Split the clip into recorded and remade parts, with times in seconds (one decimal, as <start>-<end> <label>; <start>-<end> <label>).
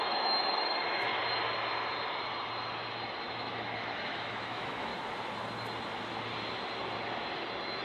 0.0-1.1 remade; 1.1-3.2 recorded; 3.2-4.9 remade; 4.9-7.8 recorded